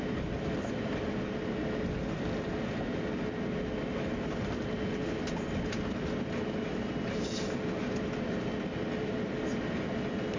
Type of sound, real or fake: real